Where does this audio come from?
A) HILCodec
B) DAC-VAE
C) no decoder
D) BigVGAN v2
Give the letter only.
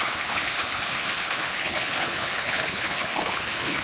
A